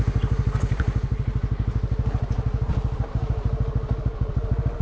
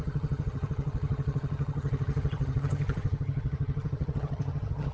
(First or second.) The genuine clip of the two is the first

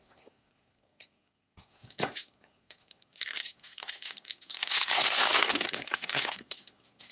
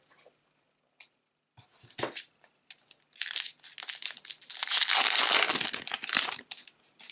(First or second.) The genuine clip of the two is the second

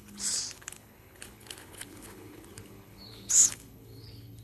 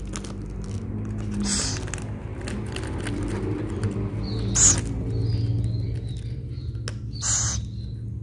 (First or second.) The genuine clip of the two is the second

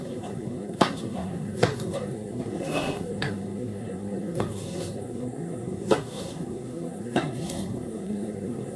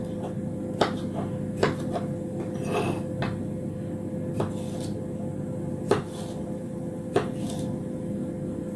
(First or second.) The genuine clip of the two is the second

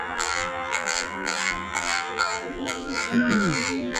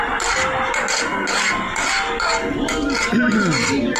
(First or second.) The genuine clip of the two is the second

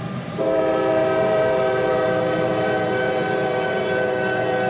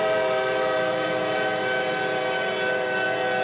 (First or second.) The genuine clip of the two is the second